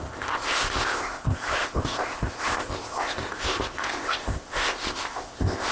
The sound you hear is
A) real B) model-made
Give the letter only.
B